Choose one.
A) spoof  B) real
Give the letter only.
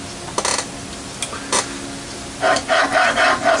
B